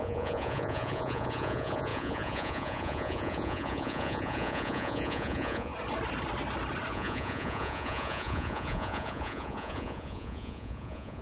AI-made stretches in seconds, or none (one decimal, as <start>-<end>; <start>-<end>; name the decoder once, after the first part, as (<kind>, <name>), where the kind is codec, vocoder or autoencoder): 0.0-5.7 (vocoder, Vocos); 6.9-11.2